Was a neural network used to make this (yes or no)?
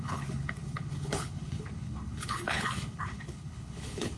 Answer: yes